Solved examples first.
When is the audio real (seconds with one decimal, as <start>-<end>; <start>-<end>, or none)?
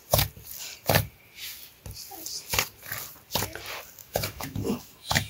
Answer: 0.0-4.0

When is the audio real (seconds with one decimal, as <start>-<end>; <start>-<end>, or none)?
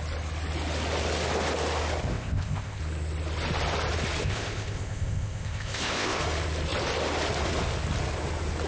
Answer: 0.0-2.0; 2.8-4.2; 6.2-8.7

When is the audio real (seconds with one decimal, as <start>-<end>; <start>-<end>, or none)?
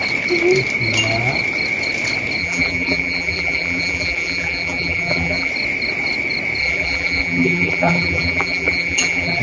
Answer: 0.0-2.4; 5.5-6.6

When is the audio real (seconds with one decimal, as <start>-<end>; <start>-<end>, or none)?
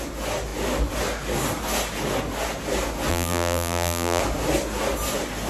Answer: 0.0-3.1; 4.2-5.5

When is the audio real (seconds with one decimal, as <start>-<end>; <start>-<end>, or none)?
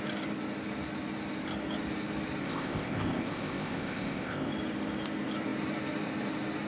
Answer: 0.0-2.4; 4.5-6.7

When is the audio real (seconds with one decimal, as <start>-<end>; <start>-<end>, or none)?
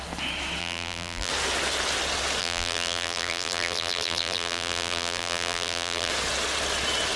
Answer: 0.0-0.6; 1.3-2.4; 6.1-7.2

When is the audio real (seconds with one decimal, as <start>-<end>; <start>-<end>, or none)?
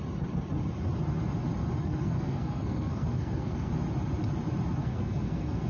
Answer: 0.0-1.8; 3.7-4.8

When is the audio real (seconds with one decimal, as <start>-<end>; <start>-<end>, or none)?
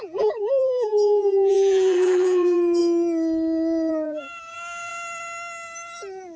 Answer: 2.8-3.9; 4.9-6.4